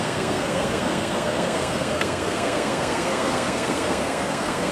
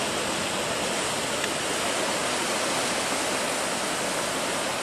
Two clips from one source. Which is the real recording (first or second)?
second